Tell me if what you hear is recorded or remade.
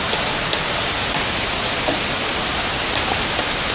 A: recorded